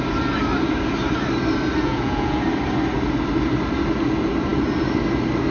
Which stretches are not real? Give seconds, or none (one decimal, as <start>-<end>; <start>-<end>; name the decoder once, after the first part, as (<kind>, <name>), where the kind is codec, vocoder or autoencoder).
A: 1.8-2.4 (vocoder, Vocos)